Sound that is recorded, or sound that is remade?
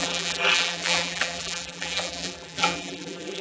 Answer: remade